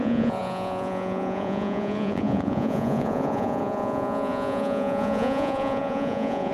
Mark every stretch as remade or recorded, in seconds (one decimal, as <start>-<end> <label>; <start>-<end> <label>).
0.0-6.5 remade